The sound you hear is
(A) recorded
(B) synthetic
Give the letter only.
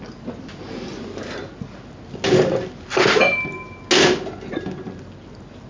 A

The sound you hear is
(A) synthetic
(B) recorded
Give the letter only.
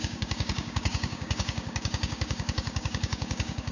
A